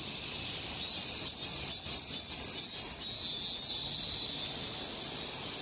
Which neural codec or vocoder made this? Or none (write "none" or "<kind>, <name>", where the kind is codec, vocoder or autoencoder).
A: none